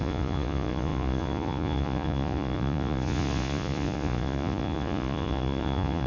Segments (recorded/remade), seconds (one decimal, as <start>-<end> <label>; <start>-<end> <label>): 0.0-6.1 remade